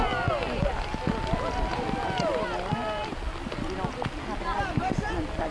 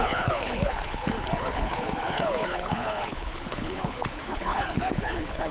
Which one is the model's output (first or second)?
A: second